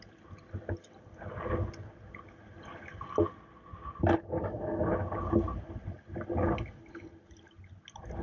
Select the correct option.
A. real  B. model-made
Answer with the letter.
A